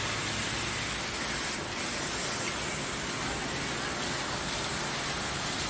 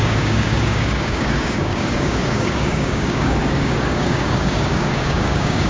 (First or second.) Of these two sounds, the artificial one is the second